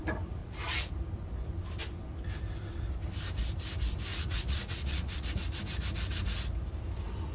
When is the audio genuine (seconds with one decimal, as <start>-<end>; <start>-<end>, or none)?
0.0-0.4; 0.9-4.1; 5.3-7.3